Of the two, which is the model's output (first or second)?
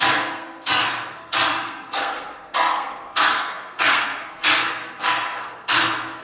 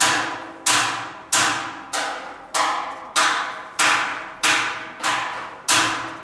first